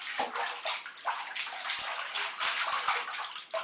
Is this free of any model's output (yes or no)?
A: yes